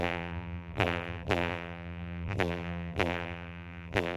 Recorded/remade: remade